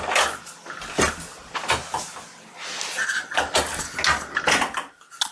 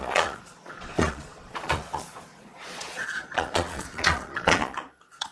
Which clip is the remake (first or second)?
second